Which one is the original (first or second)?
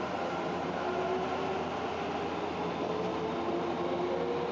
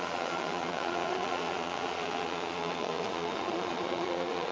first